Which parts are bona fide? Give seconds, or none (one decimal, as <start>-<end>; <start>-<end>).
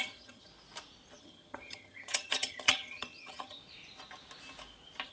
0.5-1.2; 3.6-5.1